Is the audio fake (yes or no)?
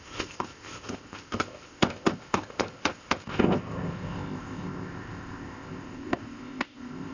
yes